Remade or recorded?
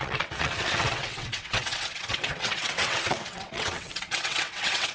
remade